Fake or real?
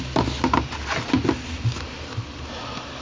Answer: real